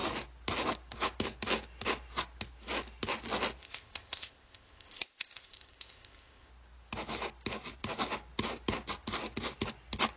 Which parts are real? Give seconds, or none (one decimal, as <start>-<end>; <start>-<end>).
0.0-3.6; 6.5-10.2